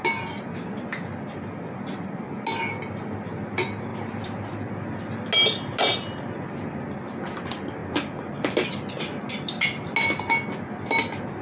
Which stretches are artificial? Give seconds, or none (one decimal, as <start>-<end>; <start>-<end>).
none